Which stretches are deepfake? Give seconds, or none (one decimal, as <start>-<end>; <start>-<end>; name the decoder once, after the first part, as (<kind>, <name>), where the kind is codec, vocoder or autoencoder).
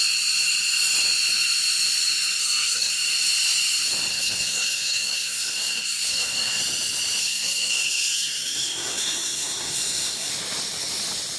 2.4-2.9 (codec, SNAC); 4.1-6.6; 7.2-10.3